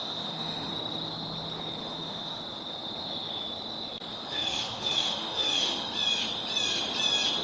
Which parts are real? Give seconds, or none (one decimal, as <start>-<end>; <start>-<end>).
0.7-1.8; 2.4-4.1; 5.9-7.4